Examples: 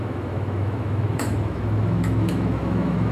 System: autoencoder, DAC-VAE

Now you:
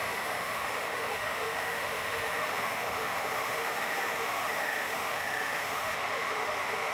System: autoencoder, DAC-VAE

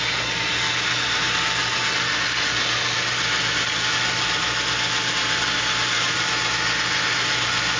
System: none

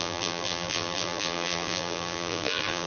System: vocoder, BigVGAN v2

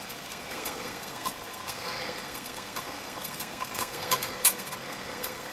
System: codec, SNAC